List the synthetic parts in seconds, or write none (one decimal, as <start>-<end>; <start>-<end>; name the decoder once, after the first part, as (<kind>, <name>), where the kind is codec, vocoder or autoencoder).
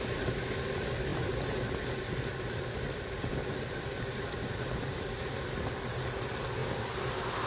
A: none